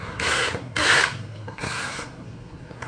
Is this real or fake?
fake